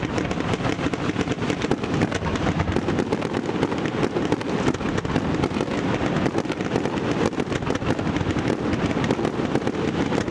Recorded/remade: recorded